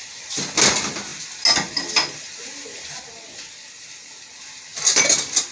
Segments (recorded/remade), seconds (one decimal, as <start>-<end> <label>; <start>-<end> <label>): 0.0-5.5 recorded